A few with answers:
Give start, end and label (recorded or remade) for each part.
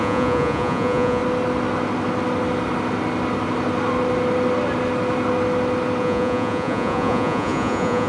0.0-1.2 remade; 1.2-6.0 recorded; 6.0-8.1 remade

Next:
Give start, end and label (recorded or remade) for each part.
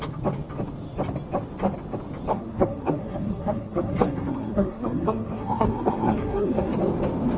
0.0-2.3 recorded; 2.3-6.7 remade; 6.7-7.4 recorded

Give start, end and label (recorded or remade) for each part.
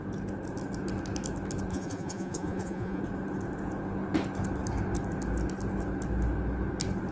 0.0-1.7 recorded; 1.7-3.0 remade; 3.0-7.1 recorded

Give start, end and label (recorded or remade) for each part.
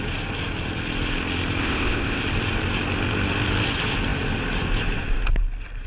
0.0-1.6 recorded; 1.6-2.2 remade; 2.2-5.9 recorded